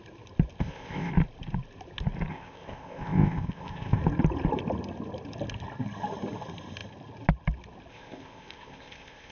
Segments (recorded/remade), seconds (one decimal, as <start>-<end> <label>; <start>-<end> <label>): 0.0-0.6 recorded; 0.6-1.1 remade; 1.1-2.3 recorded; 2.3-4.0 remade; 4.0-7.9 recorded; 7.9-9.3 remade

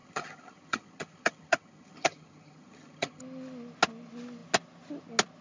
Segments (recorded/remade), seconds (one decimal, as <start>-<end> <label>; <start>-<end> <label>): 0.0-3.2 remade; 3.2-5.4 recorded

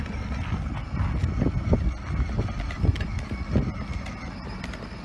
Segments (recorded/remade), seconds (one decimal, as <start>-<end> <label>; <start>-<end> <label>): 0.0-5.0 recorded

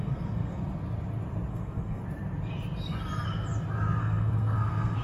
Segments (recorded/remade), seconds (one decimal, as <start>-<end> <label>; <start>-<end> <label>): 0.0-0.6 remade; 0.6-1.5 recorded; 1.5-2.0 remade; 2.0-4.0 recorded; 4.0-5.0 remade